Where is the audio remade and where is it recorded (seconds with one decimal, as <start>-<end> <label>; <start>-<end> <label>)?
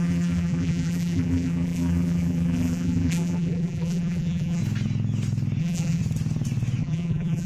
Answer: 0.0-4.6 remade; 4.6-5.6 recorded; 5.6-6.0 remade; 6.0-6.8 recorded; 6.8-7.5 remade